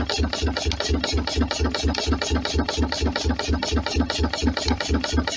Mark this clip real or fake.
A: real